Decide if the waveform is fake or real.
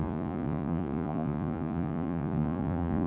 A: fake